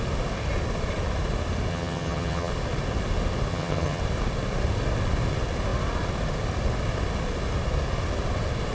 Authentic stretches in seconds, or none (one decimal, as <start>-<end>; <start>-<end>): 0.0-1.7; 2.5-3.5; 4.0-8.7